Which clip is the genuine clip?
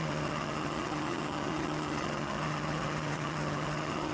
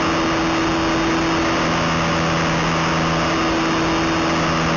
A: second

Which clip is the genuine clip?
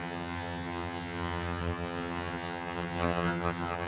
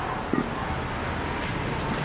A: second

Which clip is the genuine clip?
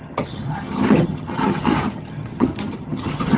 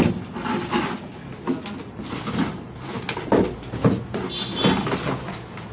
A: second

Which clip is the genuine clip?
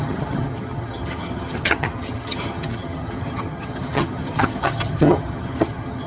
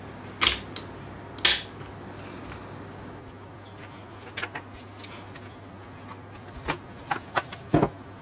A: second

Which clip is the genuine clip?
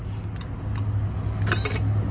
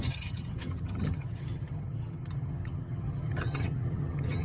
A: first